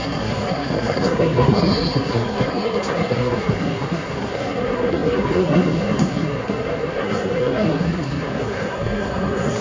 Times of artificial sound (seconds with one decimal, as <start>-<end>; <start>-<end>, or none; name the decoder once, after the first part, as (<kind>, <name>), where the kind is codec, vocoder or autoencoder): 0.0-9.6 (codec, SNAC)